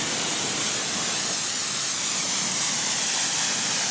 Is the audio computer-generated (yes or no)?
no